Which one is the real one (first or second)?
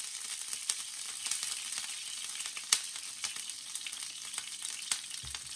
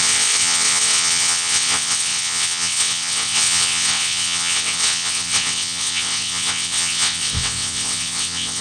first